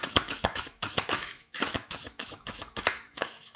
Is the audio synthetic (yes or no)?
yes